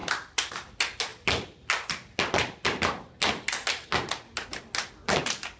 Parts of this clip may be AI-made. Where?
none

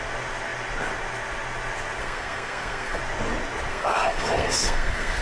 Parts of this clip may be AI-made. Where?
2.0-3.0 (codec, SNAC); 3.7-5.2

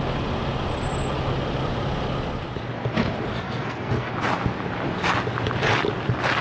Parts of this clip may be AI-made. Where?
3.3-4.1 (codec, SNAC)

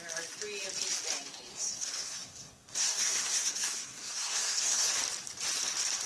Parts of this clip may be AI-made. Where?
1.5-4.9 (codec, SNAC)

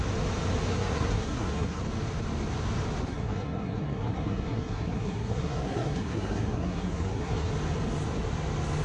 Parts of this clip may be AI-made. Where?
0.7-1.8 (codec, SNAC); 3.1-7.5

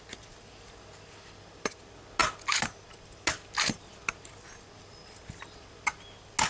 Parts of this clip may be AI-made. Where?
none

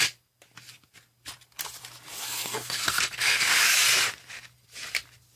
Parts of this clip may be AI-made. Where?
2.2-3.5 (codec, SNAC)